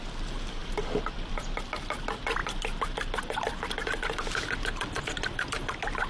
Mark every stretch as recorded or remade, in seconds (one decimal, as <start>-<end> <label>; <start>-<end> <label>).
0.0-0.6 recorded; 0.6-1.3 remade; 1.3-6.1 recorded